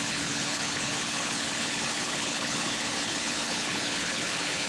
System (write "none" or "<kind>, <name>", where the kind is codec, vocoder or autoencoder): codec, HILCodec